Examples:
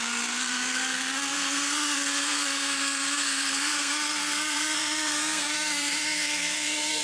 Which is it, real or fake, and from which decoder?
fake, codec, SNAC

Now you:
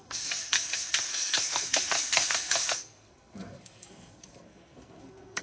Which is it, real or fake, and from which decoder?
fake, codec, SNAC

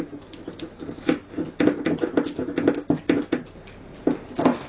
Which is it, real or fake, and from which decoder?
real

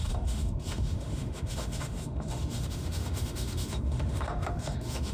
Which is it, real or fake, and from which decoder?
fake, autoencoder, DAC-VAE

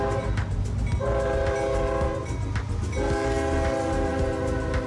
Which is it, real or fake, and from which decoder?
real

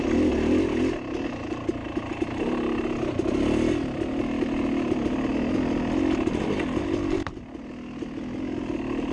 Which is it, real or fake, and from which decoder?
real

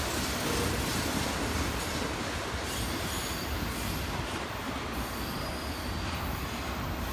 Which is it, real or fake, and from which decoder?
real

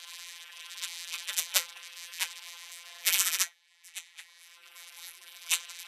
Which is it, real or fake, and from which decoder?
fake, vocoder, BigVGAN v2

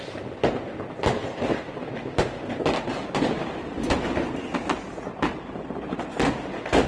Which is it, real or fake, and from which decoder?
real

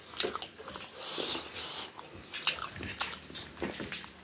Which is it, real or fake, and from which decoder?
real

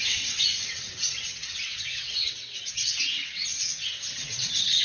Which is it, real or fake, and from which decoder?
fake, vocoder, WaveNeXt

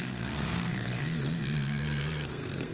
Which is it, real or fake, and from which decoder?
fake, codec, SNAC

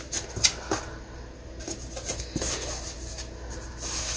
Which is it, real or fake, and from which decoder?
real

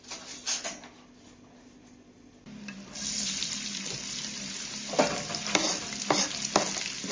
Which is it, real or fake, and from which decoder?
real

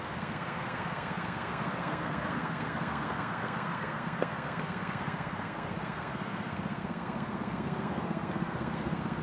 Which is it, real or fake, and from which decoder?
fake, codec, SNAC